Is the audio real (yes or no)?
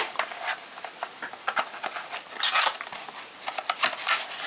yes